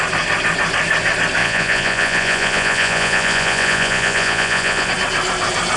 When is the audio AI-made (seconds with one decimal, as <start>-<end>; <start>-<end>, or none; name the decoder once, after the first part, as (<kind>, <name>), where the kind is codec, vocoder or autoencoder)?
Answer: 1.4-4.9 (vocoder, Vocos)